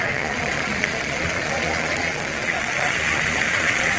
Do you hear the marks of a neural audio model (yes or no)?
yes